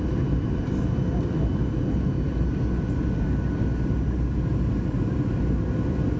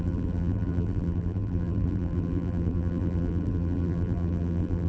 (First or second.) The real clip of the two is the first